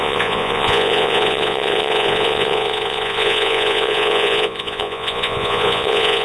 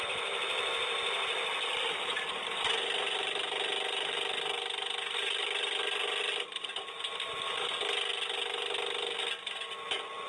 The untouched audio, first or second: second